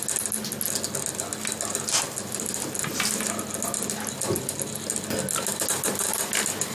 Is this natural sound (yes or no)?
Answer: yes